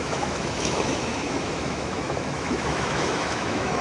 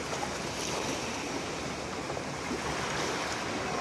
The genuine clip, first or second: second